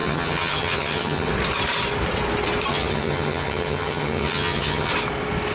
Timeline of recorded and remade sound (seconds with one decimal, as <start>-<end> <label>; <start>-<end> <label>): 0.0-1.3 remade; 1.3-2.7 recorded; 2.7-4.9 remade; 4.9-5.5 recorded